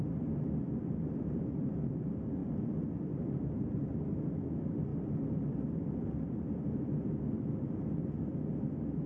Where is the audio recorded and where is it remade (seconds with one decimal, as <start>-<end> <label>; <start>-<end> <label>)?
0.0-2.4 recorded; 2.4-4.1 remade; 4.1-4.9 recorded; 4.9-5.4 remade; 5.4-9.1 recorded